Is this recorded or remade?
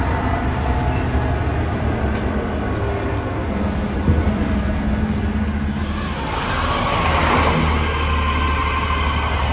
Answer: recorded